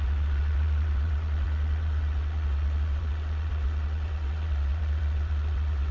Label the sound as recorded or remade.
remade